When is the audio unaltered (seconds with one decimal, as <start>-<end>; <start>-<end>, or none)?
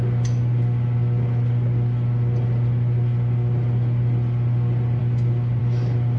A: 0.0-6.2